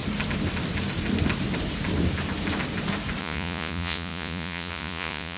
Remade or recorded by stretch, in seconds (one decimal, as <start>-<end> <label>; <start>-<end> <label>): 0.0-3.2 recorded; 3.2-5.4 remade